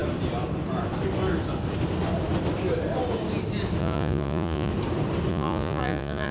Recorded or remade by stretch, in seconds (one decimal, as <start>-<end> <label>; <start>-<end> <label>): 0.0-3.8 recorded; 3.8-4.7 remade; 4.7-5.3 recorded; 5.3-6.3 remade